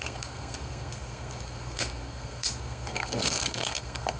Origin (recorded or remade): remade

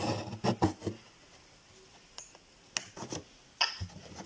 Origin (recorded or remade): recorded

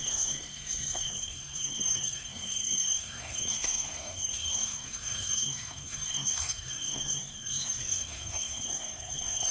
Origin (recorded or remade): remade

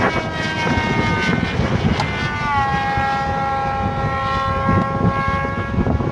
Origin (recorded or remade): recorded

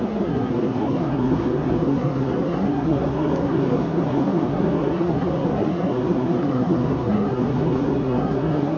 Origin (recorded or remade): remade